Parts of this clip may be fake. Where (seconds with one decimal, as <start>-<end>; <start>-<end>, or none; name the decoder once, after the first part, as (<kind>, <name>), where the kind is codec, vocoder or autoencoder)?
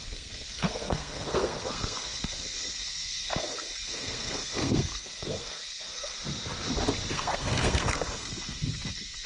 0.0-6.1 (codec, SNAC); 7.1-9.3